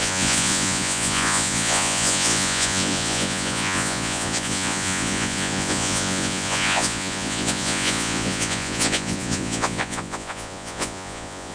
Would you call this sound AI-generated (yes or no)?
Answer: yes